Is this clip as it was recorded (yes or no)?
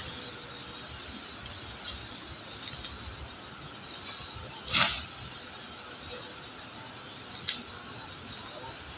yes